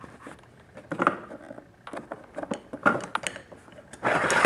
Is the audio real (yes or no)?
yes